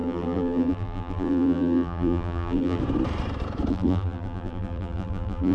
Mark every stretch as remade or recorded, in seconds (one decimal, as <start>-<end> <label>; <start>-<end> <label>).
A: 0.0-2.8 remade; 2.8-3.7 recorded; 3.7-5.5 remade